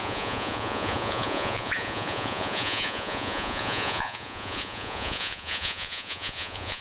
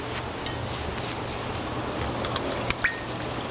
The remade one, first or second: first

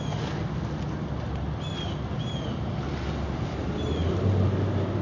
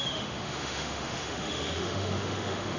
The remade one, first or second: second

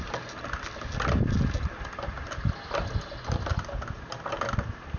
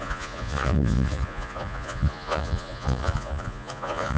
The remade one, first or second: second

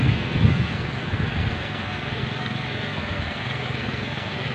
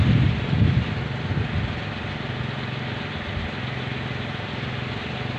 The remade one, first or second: first